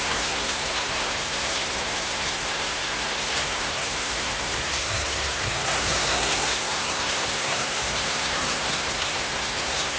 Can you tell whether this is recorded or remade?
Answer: remade